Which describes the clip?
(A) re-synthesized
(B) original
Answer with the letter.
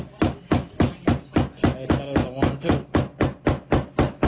B